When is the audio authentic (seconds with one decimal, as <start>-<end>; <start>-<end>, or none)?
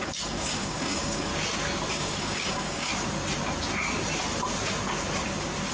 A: 1.3-1.9; 2.9-5.7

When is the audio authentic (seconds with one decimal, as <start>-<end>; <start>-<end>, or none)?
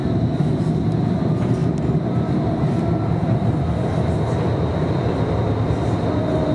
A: 0.0-6.5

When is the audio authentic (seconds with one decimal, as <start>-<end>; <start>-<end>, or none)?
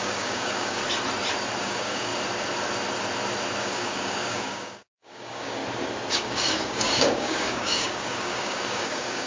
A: 0.8-1.6; 2.1-3.6; 5.6-6.1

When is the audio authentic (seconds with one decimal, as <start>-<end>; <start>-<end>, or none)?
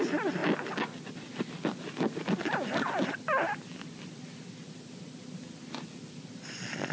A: 0.0-6.9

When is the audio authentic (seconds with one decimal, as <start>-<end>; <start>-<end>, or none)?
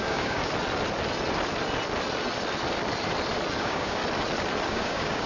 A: 0.4-3.6; 4.0-4.7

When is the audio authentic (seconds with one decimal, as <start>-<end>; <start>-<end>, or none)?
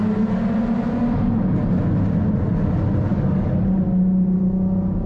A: 0.0-3.1; 3.6-5.1